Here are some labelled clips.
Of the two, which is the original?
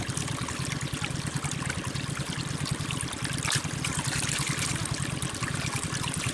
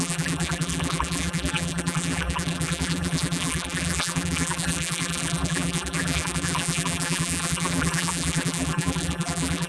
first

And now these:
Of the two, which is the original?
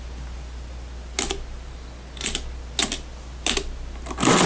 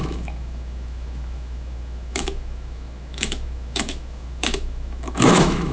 first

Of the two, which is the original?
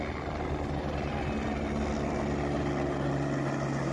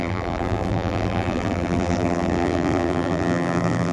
first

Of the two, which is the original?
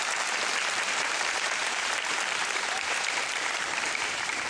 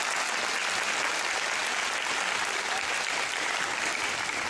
second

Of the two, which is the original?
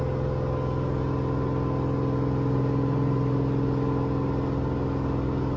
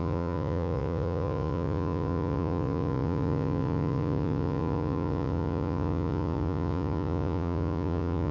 first